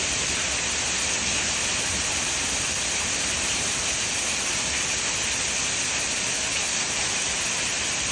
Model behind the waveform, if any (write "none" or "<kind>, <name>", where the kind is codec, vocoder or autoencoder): none